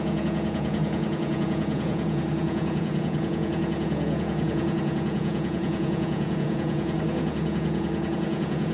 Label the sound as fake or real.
fake